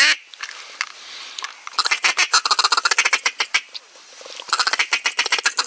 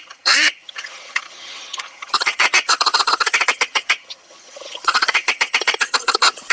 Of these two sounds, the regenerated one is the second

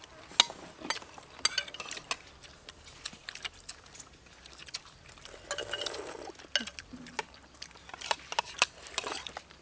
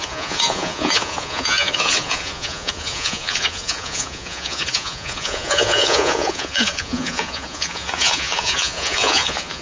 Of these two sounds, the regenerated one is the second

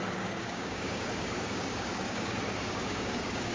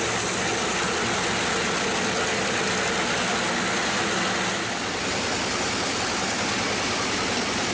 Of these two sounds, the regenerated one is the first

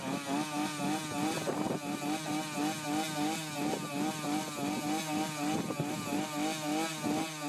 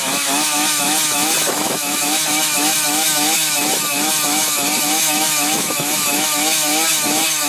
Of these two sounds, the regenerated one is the second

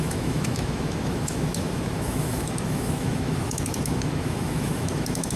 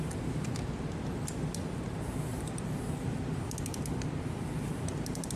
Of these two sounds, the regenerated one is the first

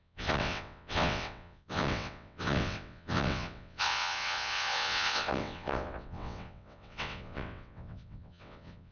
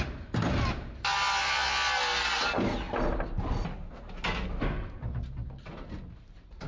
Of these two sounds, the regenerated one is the first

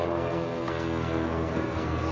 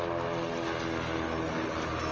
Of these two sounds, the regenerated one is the first